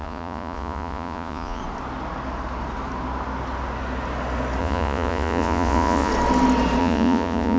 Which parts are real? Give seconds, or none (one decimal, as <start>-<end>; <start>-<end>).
1.6-4.6; 6.1-6.8